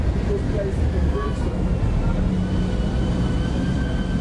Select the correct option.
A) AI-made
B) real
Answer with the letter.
B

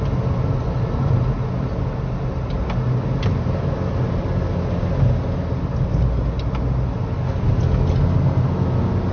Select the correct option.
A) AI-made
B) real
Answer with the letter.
B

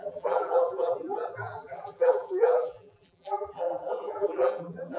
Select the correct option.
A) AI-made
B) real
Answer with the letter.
A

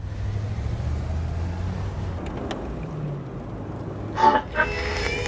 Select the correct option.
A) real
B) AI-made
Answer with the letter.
A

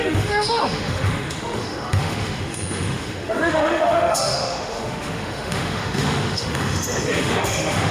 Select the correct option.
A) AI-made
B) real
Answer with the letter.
A